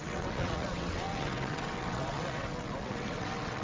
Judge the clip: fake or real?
fake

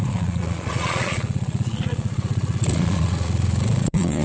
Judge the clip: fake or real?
fake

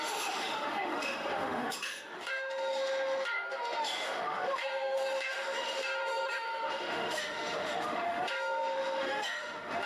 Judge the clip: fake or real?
fake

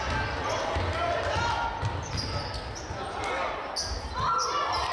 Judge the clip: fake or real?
real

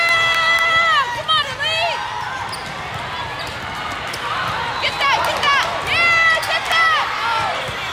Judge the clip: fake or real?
real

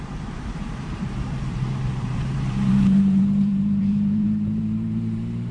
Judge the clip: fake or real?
fake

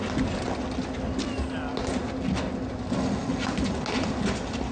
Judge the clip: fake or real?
real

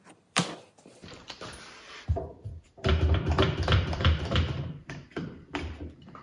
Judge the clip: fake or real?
fake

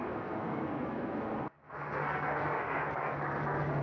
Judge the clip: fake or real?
fake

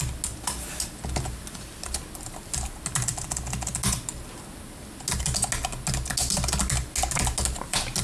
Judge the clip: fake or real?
real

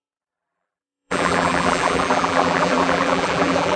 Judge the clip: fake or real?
fake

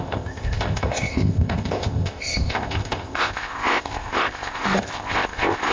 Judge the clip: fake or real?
fake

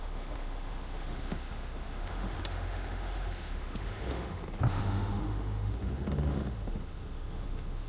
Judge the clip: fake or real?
fake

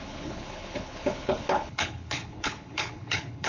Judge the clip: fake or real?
fake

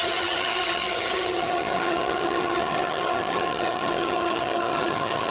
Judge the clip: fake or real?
fake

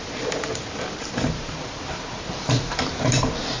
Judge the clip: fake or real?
fake